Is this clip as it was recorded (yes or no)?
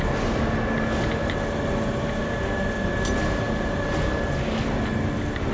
yes